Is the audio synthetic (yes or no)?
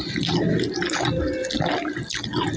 no